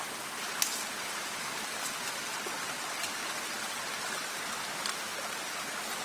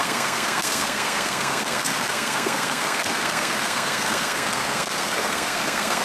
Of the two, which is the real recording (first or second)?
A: first